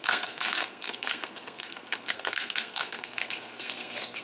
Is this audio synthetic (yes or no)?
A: yes